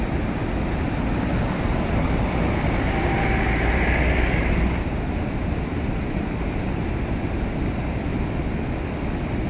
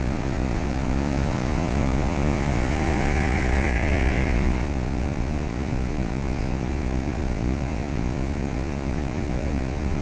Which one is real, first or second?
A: first